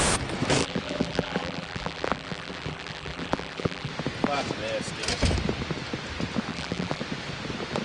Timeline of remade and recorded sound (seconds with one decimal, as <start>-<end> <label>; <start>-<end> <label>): 0.0-0.6 recorded; 0.6-3.9 remade; 3.9-6.5 recorded; 6.5-7.0 remade; 7.0-7.8 recorded